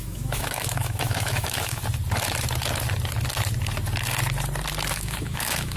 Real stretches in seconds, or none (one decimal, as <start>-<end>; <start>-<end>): 1.8-4.9